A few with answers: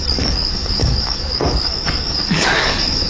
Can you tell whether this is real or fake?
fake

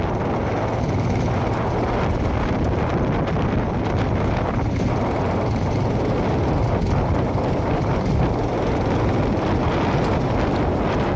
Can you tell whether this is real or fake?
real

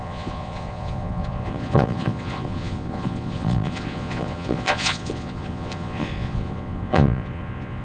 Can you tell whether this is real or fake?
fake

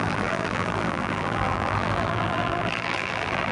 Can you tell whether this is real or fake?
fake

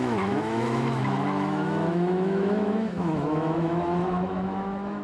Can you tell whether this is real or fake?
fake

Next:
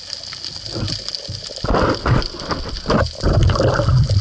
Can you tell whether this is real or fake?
real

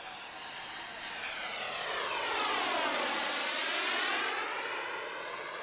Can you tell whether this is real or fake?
real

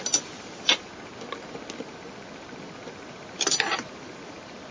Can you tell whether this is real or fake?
real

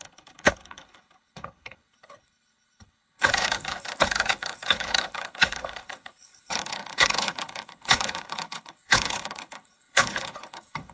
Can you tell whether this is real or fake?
fake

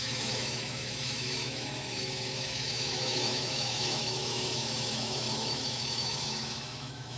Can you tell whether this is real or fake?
fake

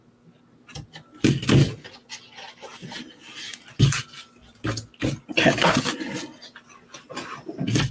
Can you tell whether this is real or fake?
real